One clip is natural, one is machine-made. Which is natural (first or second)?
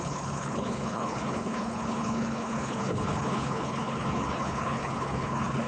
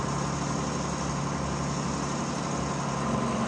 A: second